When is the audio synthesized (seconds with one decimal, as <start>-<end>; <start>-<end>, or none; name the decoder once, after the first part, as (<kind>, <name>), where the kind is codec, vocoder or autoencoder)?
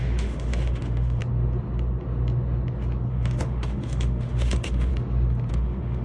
0.0-1.2 (autoencoder, DAC-VAE); 3.1-4.9; 5.5-6.0